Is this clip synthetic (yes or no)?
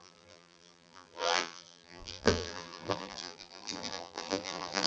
yes